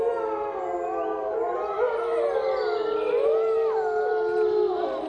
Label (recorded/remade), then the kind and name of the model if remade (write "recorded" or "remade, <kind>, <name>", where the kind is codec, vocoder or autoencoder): recorded